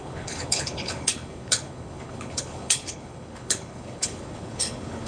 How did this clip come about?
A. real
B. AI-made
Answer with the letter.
B